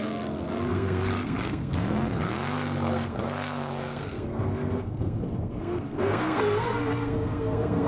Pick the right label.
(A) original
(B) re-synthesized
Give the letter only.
B